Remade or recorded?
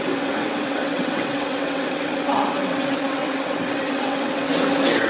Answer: remade